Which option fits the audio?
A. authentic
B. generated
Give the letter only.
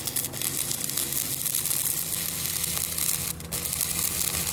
A